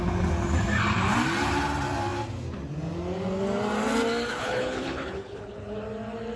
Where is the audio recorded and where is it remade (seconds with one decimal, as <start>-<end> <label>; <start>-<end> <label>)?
0.0-4.3 recorded; 4.3-5.7 remade; 5.7-6.4 recorded